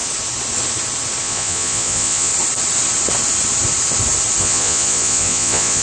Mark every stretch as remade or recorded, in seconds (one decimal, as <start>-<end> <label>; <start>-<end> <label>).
0.0-1.2 recorded; 1.2-2.3 remade; 2.3-4.4 recorded; 4.4-5.8 remade